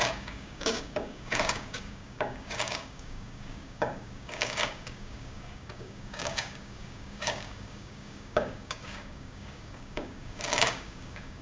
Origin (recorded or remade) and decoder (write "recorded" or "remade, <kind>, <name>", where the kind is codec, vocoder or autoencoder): remade, codec, DAC